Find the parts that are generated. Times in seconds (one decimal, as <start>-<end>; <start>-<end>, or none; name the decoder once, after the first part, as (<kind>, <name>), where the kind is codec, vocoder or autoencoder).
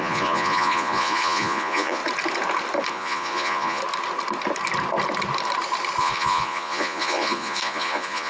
0.0-2.0 (vocoder, Vocos); 2.9-3.8; 6.0-8.3